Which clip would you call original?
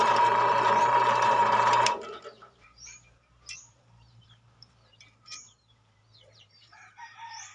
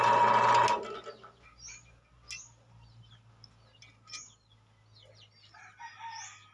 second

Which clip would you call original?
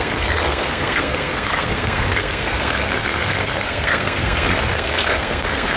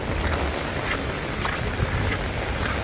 second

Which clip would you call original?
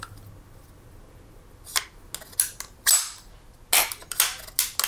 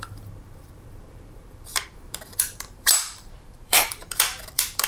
first